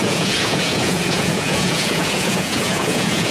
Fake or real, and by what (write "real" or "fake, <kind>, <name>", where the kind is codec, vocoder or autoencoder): fake, vocoder, Vocos